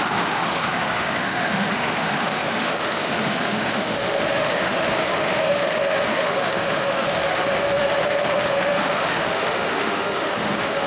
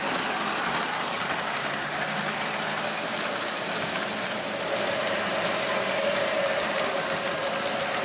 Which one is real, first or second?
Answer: second